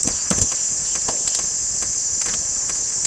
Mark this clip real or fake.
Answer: real